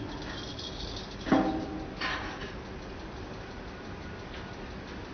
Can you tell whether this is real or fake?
real